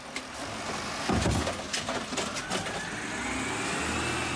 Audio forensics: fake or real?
real